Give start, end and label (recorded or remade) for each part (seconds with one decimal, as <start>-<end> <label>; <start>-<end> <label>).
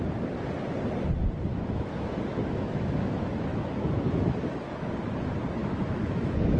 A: 0.0-1.5 recorded; 1.5-4.9 remade; 4.9-5.6 recorded; 5.6-6.6 remade